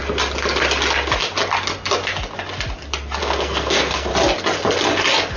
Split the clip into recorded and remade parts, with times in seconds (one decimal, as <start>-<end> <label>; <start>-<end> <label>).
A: 0.0-3.2 recorded; 3.2-4.1 remade; 4.1-5.4 recorded